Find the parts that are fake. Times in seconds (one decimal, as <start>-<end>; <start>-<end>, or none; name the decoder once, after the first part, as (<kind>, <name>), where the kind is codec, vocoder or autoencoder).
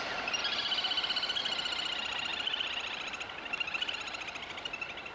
none